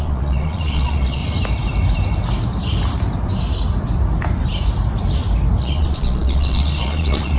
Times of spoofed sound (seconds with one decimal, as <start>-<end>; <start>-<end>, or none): 0.0-1.2; 5.6-7.4